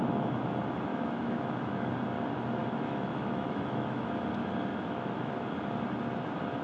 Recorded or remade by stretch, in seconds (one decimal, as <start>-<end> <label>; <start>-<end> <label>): 0.0-0.9 recorded; 0.9-1.9 remade; 1.9-2.6 recorded; 2.6-4.1 remade; 4.1-4.7 recorded; 4.7-5.3 remade; 5.3-6.6 recorded